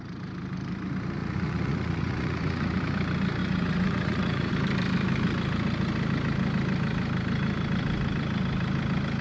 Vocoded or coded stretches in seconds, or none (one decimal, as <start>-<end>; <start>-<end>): 1.2-2.8; 3.4-4.5